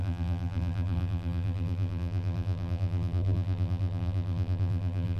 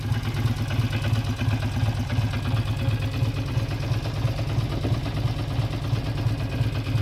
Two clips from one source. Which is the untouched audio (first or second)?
second